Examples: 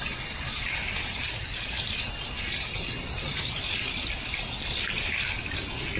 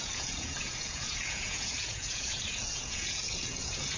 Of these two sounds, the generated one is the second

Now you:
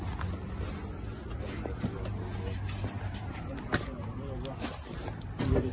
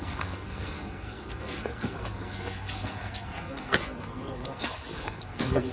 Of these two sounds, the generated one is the second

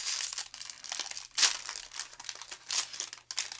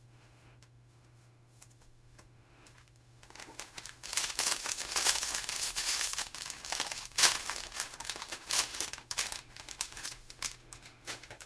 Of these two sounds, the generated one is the second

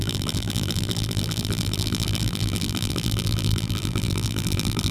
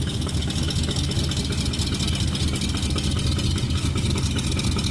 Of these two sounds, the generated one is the first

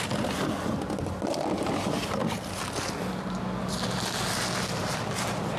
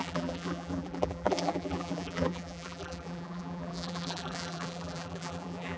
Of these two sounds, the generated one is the second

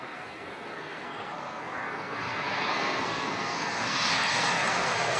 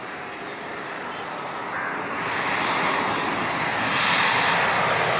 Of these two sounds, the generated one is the first